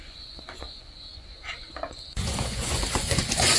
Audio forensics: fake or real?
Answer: fake